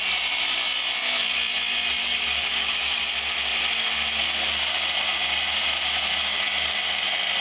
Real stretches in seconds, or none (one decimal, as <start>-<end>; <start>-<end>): 0.0-2.0; 3.0-7.4